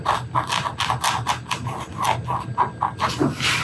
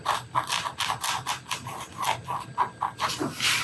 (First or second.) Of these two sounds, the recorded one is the first